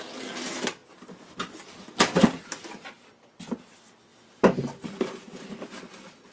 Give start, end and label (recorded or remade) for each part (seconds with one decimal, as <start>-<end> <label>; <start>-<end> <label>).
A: 0.0-6.3 recorded